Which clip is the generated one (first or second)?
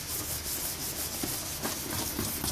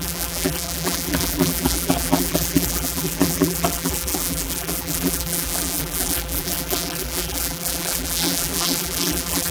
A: second